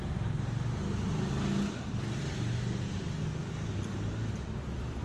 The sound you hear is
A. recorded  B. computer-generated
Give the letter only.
A